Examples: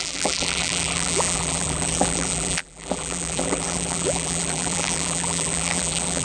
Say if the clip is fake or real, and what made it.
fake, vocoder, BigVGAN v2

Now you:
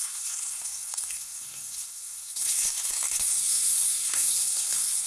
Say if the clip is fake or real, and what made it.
fake, codec, SNAC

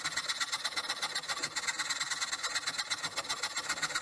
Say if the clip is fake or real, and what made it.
real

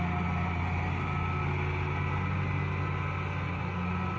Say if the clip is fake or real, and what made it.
real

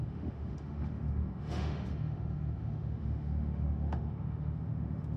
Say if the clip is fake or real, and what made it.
fake, autoencoder, DAC-VAE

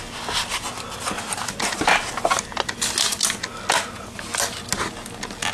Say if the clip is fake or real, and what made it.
real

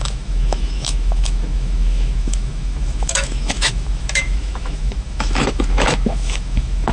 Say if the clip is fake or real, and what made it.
fake, autoencoder, DAC-VAE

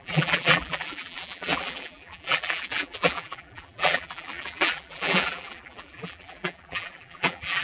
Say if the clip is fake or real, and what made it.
fake, vocoder, BigVGAN v2